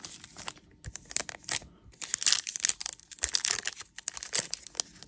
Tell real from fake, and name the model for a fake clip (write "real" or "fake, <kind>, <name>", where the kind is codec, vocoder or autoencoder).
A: real